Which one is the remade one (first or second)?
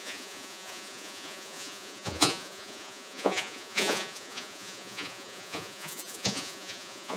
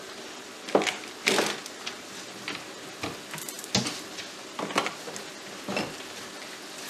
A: first